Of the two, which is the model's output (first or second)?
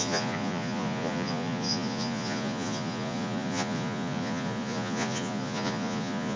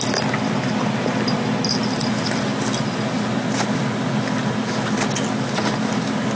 first